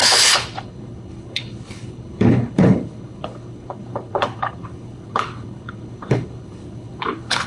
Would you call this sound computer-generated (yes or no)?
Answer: yes